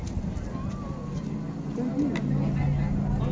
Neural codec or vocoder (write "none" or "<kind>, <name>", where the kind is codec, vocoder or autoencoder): none